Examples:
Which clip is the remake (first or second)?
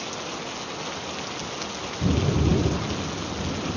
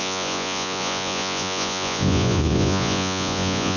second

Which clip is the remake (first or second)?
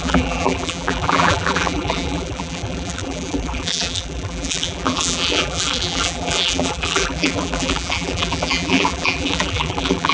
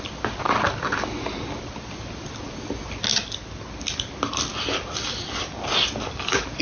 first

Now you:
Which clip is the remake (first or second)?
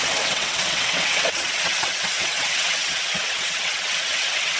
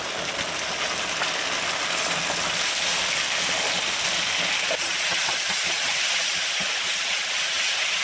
first